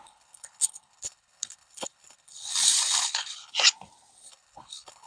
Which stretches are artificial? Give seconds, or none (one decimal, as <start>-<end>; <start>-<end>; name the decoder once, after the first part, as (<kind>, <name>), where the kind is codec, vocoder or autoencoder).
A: 0.0-2.5 (codec, HILCodec); 3.0-3.5; 4.3-5.1